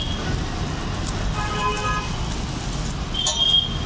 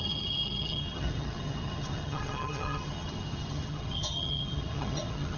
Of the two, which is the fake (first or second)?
second